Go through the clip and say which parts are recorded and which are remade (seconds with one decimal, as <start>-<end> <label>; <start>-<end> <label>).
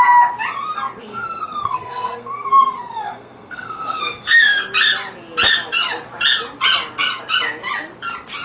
0.0-1.0 recorded; 1.0-4.6 remade; 4.6-8.4 recorded